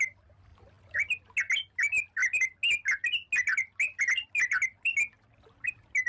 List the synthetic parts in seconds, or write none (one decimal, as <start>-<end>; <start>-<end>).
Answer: none